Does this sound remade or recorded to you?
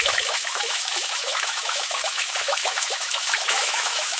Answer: remade